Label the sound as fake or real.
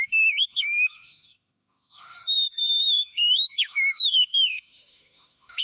fake